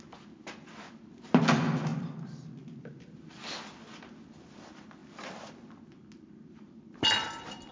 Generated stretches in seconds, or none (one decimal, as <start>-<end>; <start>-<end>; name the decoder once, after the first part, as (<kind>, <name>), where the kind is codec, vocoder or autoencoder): 1.9-2.6 (vocoder, BigVGAN v2)